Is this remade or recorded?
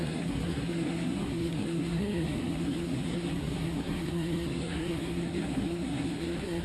remade